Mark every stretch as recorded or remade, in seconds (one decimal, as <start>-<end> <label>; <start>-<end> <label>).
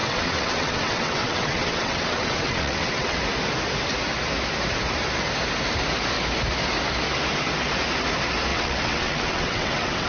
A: 0.0-3.2 remade; 3.2-8.5 recorded; 8.5-10.1 remade